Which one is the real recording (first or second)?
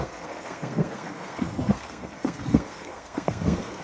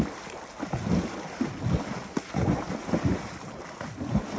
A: second